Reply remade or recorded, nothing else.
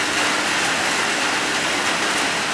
recorded